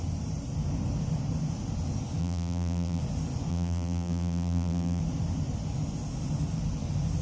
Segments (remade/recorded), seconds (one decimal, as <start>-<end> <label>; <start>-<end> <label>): 0.0-2.2 recorded; 2.2-3.0 remade; 3.0-3.5 recorded; 3.5-5.0 remade; 5.0-7.2 recorded